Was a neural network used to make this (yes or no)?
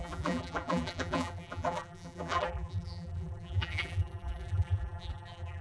yes